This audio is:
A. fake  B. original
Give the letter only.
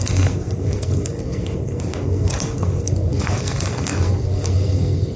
A